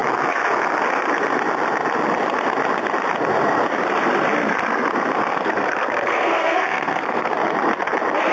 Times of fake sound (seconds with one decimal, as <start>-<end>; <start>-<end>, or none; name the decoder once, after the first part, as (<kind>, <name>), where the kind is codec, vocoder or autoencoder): 5.3-7.3 (codec, SNAC)